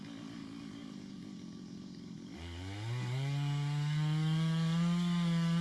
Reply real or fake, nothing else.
fake